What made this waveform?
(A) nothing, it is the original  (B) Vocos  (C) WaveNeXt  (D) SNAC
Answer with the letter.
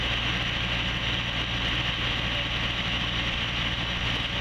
A